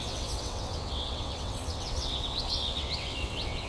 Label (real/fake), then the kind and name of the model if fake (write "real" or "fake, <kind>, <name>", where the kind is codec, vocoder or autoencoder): fake, vocoder, WaveNeXt